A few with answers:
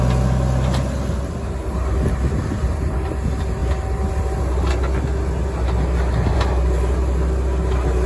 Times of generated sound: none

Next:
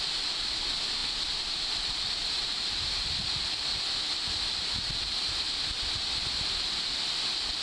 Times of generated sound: 2.2-3.2 (vocoder, BigVGAN v2)

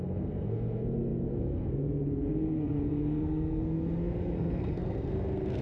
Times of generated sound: 0.0-5.6 (codec, SNAC)